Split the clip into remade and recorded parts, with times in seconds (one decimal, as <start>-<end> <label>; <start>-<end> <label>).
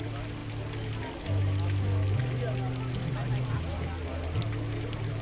0.0-5.2 recorded